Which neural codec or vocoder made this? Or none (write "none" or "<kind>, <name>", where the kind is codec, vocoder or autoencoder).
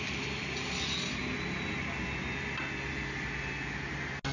none